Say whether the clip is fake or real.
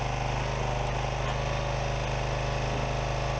real